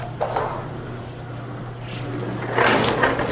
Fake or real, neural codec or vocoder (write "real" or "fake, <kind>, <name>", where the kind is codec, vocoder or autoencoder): real